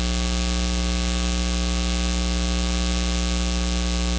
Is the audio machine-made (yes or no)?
no